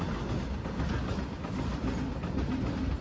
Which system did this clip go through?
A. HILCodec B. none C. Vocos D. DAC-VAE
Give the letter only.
B